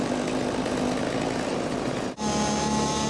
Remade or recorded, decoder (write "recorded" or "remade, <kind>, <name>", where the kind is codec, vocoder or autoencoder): recorded